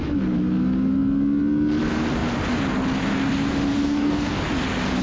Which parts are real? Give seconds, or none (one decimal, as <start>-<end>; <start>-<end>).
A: 0.0-3.7; 4.3-5.0